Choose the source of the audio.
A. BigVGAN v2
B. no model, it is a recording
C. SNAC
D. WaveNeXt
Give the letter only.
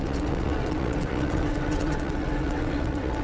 D